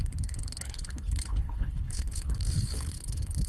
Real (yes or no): no